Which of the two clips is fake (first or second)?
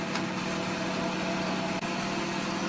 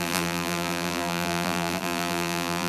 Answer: second